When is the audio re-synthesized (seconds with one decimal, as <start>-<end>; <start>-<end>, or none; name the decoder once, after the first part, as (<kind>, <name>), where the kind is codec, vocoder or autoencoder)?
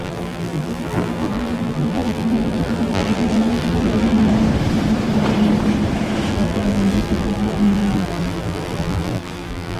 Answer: 0.0-4.3 (vocoder, BigVGAN v2); 6.3-9.8